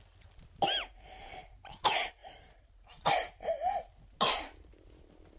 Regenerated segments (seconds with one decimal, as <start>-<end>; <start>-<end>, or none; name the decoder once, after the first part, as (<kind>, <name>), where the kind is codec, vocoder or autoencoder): 2.2-3.1 (vocoder, BigVGAN v2)